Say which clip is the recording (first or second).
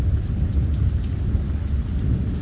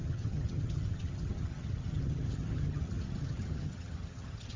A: first